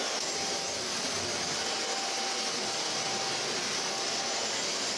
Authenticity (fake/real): real